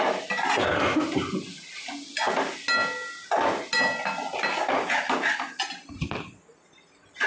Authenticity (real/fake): real